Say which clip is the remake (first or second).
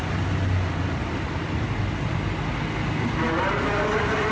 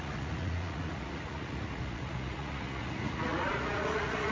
second